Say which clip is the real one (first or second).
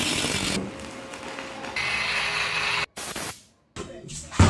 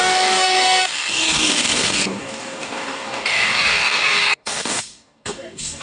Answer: first